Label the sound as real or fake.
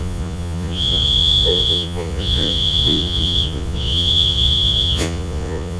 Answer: fake